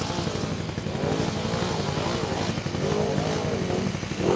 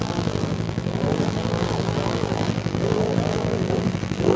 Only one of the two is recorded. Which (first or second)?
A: first